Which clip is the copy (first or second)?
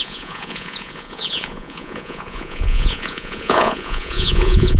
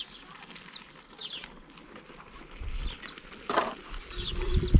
first